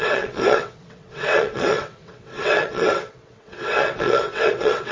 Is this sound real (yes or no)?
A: no